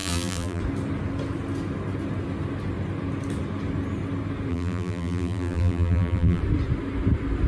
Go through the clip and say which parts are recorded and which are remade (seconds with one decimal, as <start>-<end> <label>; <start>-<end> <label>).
0.0-0.6 remade; 0.6-4.5 recorded; 4.5-6.4 remade; 6.4-7.5 recorded